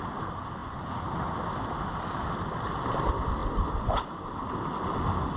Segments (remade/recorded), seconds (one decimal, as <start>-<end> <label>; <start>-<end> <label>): 0.0-5.4 recorded